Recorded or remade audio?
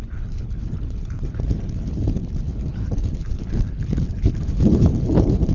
remade